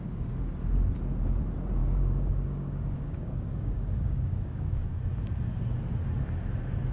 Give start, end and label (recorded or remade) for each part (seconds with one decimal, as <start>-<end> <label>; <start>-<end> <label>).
0.0-1.8 recorded; 1.8-4.9 remade; 4.9-6.9 recorded